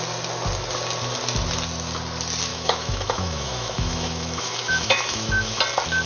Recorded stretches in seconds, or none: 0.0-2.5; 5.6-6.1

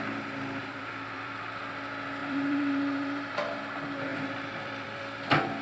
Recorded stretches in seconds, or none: 0.0-0.6; 1.6-2.2; 3.6-4.1; 5.0-5.6